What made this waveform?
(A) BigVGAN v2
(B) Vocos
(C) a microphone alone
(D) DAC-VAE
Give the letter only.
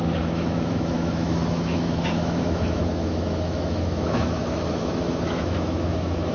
D